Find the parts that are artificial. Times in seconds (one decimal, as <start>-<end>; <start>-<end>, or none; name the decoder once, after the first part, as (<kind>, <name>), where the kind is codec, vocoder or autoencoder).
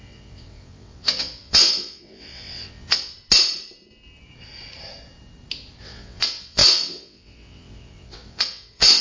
0.0-3.1 (vocoder, WaveNeXt); 5.8-9.0